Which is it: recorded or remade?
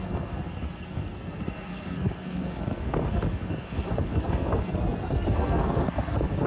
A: remade